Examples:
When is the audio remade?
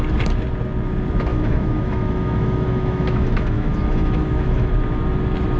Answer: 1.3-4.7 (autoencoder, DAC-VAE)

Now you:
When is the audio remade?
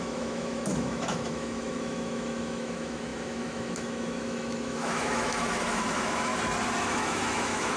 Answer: 0.0-6.3 (autoencoder, DAC-VAE); 6.8-7.8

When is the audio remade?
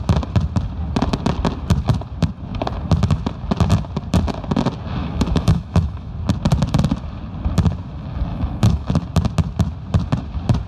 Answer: 5.0-6.1 (autoencoder, DAC-VAE); 8.3-8.9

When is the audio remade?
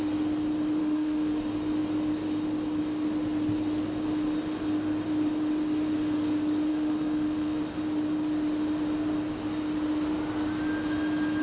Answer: 0.8-1.4 (autoencoder, DAC-VAE); 6.7-7.6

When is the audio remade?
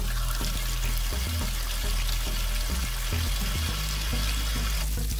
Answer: none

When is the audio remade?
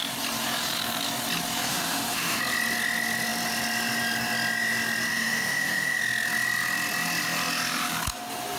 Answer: 1.7-2.4 (autoencoder, DAC-VAE); 5.1-6.0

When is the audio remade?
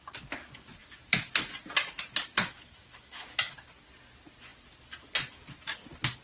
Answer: 0.8-1.3 (autoencoder, DAC-VAE); 2.4-3.5